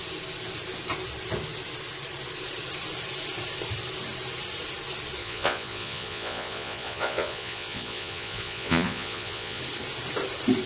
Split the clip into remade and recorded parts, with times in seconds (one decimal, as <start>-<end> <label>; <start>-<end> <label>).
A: 0.0-5.2 recorded; 5.2-9.6 remade; 9.6-10.7 recorded